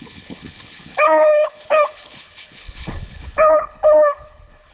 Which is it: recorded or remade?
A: remade